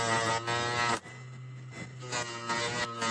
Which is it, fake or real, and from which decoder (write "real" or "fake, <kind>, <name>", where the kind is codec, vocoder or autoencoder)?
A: real